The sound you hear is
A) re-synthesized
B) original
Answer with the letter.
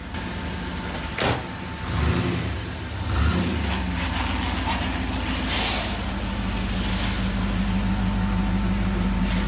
B